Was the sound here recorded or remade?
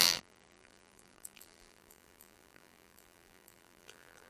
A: remade